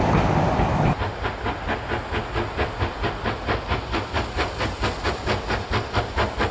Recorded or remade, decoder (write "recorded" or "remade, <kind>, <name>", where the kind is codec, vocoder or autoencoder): recorded